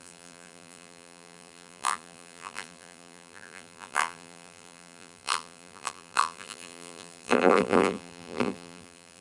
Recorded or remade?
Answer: remade